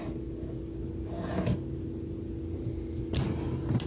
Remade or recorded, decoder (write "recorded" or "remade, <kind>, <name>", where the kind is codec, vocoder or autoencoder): recorded